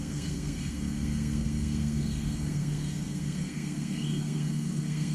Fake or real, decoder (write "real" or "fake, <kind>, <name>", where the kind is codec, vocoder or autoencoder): fake, codec, SNAC